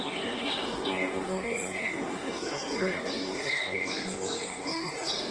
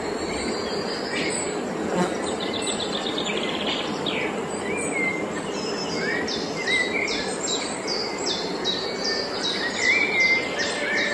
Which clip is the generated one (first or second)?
first